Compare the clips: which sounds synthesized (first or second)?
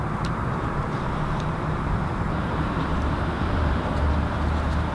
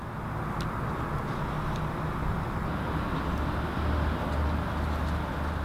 first